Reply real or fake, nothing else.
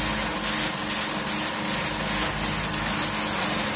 real